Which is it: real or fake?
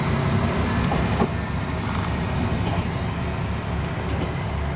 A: real